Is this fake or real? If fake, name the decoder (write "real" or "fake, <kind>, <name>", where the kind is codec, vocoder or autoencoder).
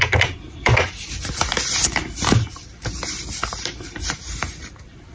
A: fake, vocoder, BigVGAN v2